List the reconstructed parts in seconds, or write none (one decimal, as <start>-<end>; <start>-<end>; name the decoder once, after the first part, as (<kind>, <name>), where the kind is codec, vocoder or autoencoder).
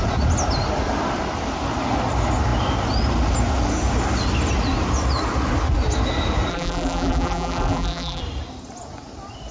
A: 6.5-8.2 (vocoder, BigVGAN v2)